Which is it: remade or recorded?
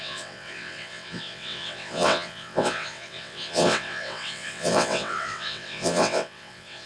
remade